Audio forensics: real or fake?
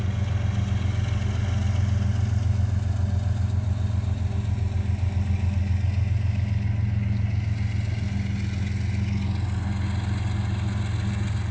real